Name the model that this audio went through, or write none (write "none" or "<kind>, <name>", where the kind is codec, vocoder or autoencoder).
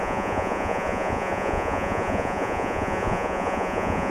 vocoder, Vocos